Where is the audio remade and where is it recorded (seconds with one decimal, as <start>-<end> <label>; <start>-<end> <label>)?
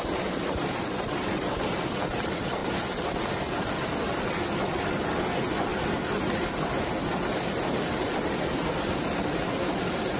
0.0-2.6 remade; 2.6-5.0 recorded; 5.0-5.7 remade; 5.7-9.2 recorded; 9.2-10.2 remade